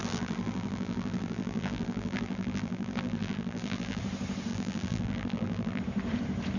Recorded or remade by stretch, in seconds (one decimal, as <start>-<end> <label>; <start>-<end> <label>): 0.0-4.0 remade; 4.0-4.5 recorded; 4.5-5.8 remade; 5.8-6.6 recorded